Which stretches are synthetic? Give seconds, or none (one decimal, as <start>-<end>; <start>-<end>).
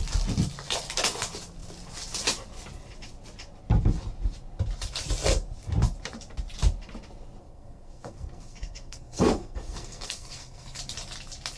7.4-10.8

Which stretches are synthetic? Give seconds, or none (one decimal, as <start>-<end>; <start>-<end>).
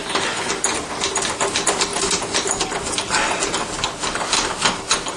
none